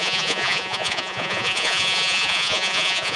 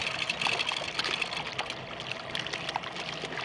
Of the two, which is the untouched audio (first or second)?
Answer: second